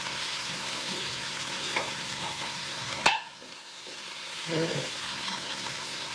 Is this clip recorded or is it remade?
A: remade